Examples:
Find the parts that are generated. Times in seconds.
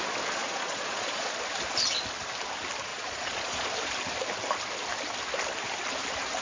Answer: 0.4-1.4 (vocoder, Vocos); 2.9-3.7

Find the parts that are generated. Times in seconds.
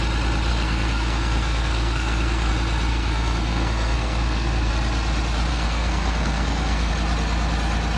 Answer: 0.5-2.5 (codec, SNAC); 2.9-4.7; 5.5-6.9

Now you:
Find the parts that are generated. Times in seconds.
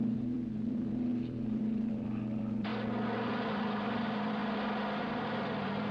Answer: 0.0-2.7 (vocoder, BigVGAN v2); 3.3-4.4; 5.0-5.9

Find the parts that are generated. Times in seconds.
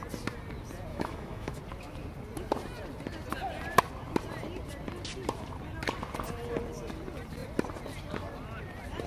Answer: 0.9-1.6 (autoencoder, DAC-VAE)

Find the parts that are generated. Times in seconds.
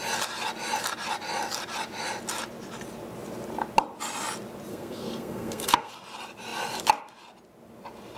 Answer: 4.7-5.9 (codec, SNAC)